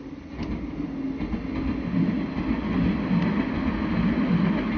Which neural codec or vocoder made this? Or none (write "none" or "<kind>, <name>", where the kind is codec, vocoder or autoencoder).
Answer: none